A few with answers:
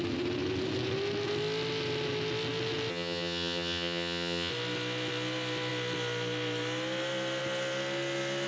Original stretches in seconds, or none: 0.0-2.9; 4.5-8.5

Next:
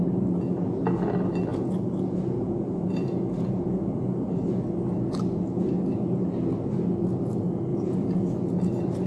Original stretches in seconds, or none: 0.0-1.5; 4.3-7.7; 8.3-9.1

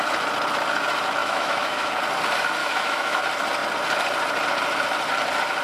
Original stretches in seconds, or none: 0.0-1.2; 1.9-2.6; 3.2-5.6

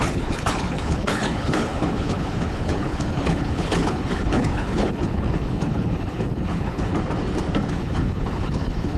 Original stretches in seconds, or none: 6.9-7.7

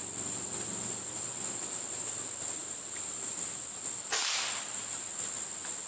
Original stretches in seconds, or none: 0.0-5.9

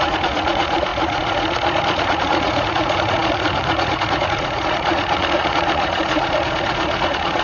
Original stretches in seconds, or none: none

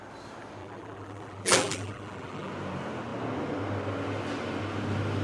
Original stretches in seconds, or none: 0.0-0.6; 2.5-5.2

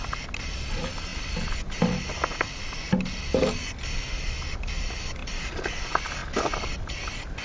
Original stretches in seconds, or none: 0.0-7.4